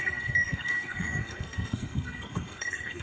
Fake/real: fake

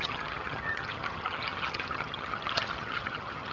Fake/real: fake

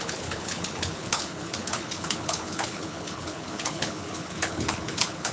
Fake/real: fake